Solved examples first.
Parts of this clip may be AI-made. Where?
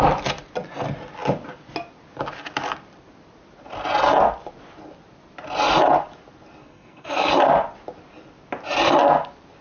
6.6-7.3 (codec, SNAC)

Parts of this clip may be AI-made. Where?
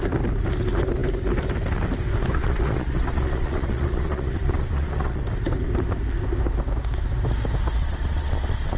2.3-5.2 (vocoder, Vocos); 7.8-8.8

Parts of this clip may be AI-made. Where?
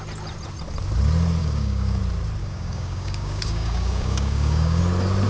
1.4-2.0 (codec, DAC); 2.4-4.8